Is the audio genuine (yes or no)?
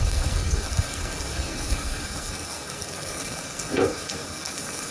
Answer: no